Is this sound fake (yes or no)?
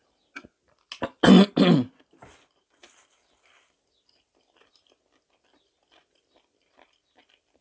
no